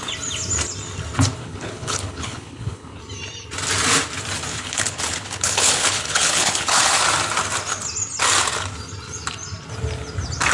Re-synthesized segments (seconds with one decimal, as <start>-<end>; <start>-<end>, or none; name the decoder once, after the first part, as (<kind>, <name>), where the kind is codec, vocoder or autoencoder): 1.4-3.0 (codec, HILCodec); 4.5-7.0